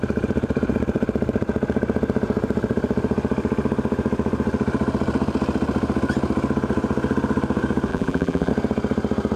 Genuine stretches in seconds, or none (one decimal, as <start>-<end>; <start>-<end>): 0.0-7.9; 8.5-9.4